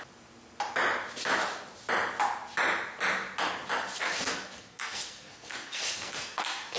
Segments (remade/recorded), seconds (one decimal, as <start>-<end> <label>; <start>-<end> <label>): 0.0-3.9 recorded; 3.9-6.8 remade